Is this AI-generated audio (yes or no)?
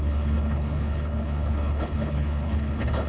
yes